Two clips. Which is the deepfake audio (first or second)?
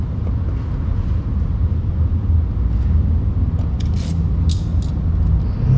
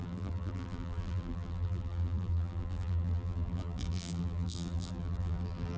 second